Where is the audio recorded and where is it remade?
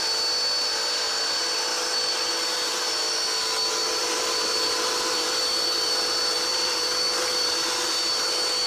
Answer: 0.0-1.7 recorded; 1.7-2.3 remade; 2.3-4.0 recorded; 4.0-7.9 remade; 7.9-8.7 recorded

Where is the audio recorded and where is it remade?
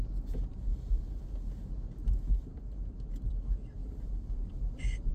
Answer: 0.0-0.4 recorded; 0.4-1.0 remade; 1.0-2.0 recorded; 2.0-3.3 remade; 3.3-3.8 recorded; 3.8-5.1 remade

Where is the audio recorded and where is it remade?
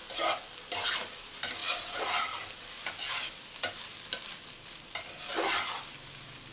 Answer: 0.0-6.5 recorded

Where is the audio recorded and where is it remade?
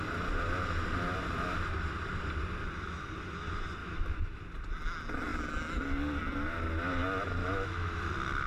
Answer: 0.0-3.8 recorded; 3.8-4.4 remade; 4.4-7.4 recorded; 7.4-8.1 remade; 8.1-8.5 recorded